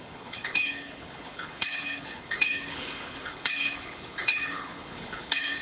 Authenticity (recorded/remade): remade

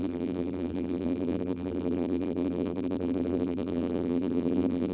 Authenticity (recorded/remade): remade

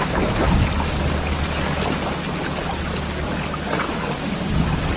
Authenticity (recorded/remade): recorded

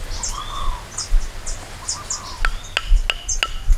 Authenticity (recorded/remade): recorded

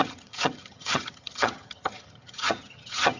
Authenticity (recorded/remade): remade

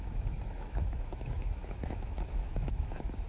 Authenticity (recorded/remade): remade